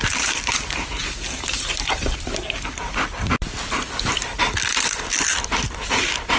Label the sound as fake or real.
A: fake